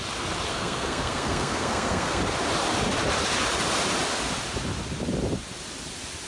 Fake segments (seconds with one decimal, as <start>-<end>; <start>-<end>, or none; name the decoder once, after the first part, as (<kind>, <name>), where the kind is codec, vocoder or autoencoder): 0.5-2.2 (codec, SNAC)

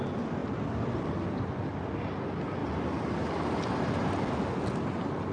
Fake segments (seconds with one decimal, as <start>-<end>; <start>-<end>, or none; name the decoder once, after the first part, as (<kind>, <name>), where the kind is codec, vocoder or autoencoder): none

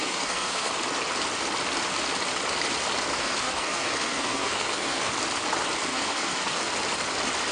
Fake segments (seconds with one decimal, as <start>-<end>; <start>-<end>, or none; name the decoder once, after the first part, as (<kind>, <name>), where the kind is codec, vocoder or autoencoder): 0.0-0.7 (codec, SNAC); 3.1-5.1; 5.9-6.6

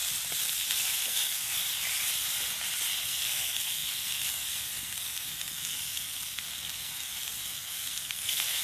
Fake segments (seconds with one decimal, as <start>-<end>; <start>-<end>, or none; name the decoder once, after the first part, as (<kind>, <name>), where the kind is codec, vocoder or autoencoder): 0.7-1.6 (codec, SNAC); 3.0-8.6

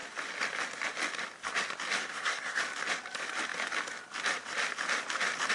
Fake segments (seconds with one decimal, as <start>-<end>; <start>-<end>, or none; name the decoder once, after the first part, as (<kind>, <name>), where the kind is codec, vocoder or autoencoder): 2.0-2.6 (codec, SNAC)

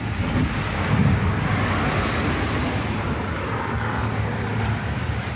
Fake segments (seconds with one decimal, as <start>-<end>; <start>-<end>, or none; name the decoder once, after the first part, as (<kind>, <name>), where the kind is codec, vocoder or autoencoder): none

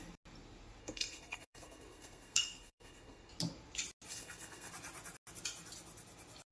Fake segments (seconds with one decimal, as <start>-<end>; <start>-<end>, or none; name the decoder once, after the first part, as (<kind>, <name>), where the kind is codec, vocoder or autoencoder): 0.8-3.3 (codec, SNAC); 4.1-4.7